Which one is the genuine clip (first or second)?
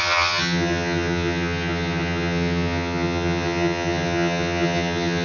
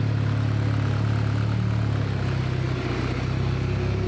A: second